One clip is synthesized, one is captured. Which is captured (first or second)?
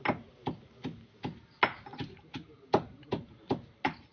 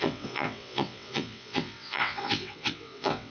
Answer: first